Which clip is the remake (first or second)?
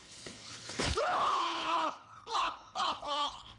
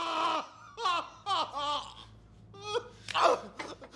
first